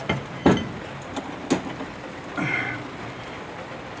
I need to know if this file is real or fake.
real